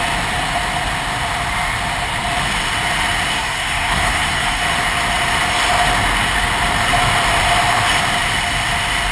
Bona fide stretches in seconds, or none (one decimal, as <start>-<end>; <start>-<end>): 0.0-3.3; 4.6-9.1